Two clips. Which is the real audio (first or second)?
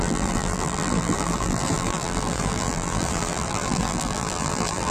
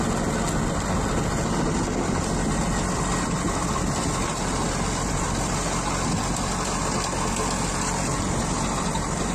second